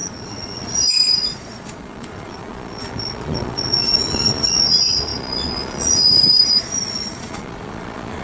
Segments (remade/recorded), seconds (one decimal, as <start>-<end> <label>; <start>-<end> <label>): 0.0-8.2 remade